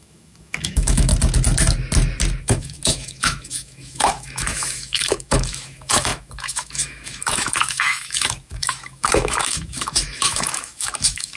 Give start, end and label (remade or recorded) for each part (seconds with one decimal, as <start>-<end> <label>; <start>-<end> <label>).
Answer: 0.0-1.1 remade; 1.1-2.4 recorded; 2.4-11.4 remade